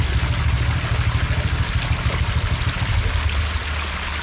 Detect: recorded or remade recorded